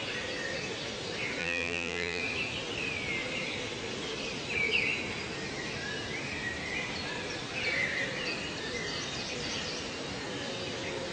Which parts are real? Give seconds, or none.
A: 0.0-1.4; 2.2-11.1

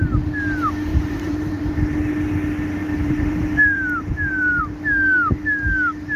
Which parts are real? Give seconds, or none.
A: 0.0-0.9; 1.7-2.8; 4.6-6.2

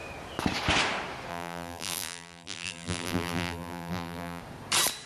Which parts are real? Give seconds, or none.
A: 0.0-1.3; 4.4-5.1